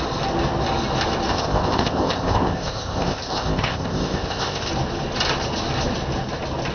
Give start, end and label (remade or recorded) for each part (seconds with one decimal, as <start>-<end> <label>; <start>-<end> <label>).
0.0-1.3 recorded; 1.3-4.7 remade; 4.7-6.7 recorded